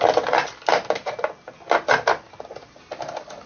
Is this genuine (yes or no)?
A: yes